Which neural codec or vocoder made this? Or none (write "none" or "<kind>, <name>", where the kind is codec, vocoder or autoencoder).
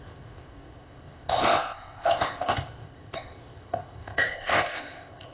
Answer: codec, ZipCodec